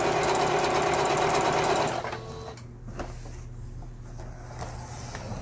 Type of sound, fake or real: real